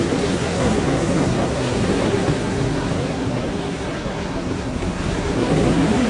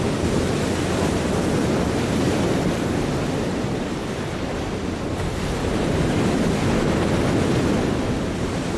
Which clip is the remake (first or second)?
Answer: first